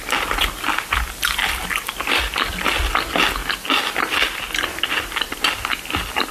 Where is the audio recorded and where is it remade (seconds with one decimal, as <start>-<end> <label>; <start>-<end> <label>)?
0.0-6.3 recorded